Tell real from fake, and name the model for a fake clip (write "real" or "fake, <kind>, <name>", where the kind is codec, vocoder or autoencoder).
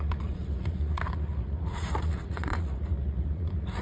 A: fake, vocoder, Vocos